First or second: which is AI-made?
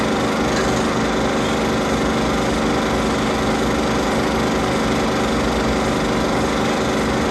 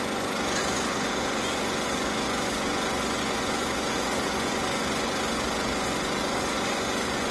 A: second